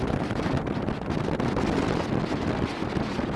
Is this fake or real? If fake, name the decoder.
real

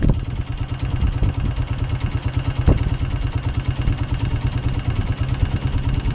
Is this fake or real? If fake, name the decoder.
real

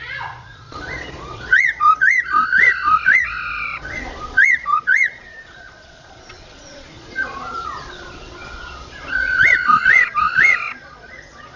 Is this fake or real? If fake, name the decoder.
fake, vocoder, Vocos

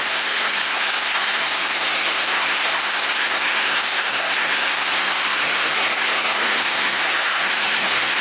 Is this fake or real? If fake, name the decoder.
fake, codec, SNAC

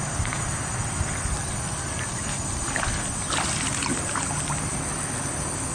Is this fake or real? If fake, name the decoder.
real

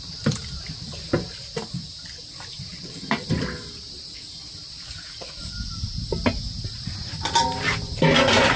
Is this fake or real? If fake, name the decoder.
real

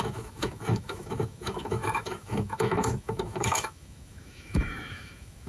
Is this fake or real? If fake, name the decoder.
fake, autoencoder, DAC-VAE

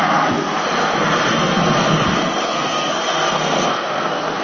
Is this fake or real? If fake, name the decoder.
fake, codec, SNAC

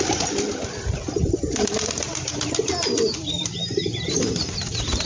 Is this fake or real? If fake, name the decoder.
fake, vocoder, BigVGAN v2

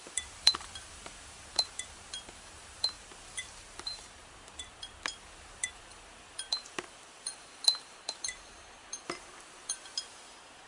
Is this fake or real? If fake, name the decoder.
fake, vocoder, BigVGAN v2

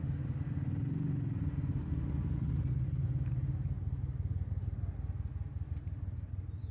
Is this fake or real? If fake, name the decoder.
real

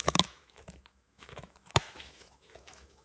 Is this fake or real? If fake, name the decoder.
fake, autoencoder, DAC-VAE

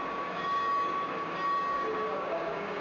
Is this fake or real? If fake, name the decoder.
fake, codec, DAC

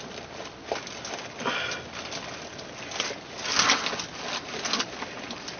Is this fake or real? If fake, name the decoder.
real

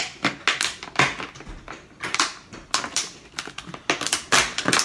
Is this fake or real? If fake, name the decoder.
real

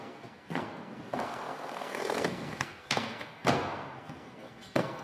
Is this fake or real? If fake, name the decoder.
fake, codec, SNAC